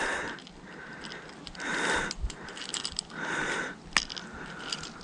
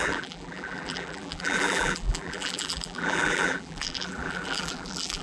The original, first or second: first